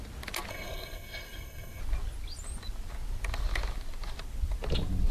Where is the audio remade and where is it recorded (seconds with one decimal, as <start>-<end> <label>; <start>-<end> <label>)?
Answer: 0.0-0.5 recorded; 0.5-1.8 remade; 1.8-5.1 recorded